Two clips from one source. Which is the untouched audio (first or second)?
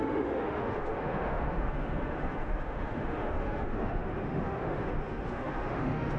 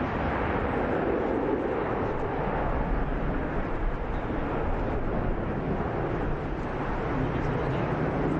second